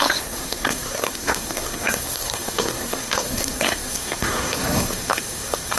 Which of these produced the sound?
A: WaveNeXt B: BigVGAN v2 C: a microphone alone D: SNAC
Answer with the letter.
D